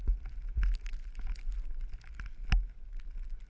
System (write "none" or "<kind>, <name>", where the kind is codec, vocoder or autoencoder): none